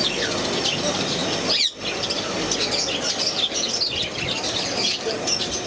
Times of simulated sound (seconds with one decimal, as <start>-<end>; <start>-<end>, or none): none